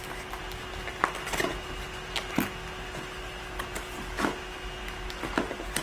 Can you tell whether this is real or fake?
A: real